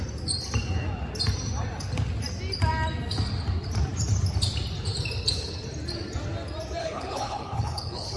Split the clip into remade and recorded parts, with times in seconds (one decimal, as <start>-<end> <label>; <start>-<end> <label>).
0.0-6.8 recorded; 6.8-8.2 remade